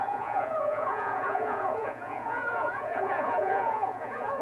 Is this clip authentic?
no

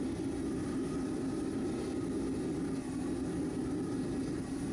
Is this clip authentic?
yes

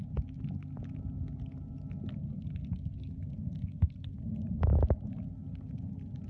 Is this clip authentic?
yes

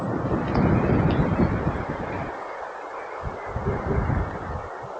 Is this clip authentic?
yes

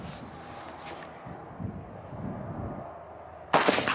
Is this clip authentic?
yes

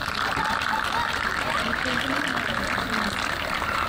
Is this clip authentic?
yes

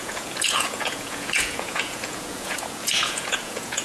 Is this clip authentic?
no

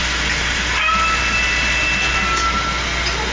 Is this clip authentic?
yes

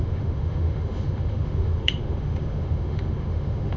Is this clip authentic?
no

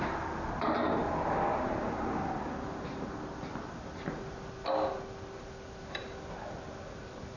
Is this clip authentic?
yes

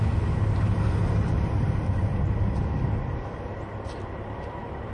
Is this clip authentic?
yes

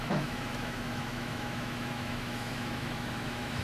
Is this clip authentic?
no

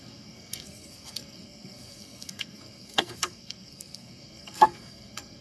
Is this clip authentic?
no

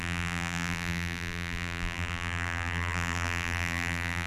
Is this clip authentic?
no